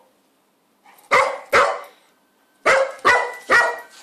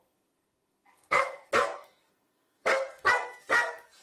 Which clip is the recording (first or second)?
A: first